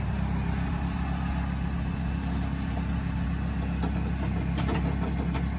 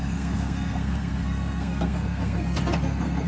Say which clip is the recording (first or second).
first